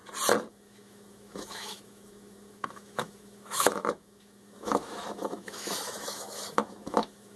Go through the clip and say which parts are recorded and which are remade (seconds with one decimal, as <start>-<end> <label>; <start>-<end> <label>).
0.0-0.5 recorded; 0.5-7.4 remade